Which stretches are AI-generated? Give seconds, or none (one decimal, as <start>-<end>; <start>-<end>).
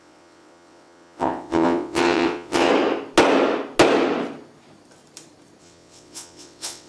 0.0-2.7; 5.6-6.9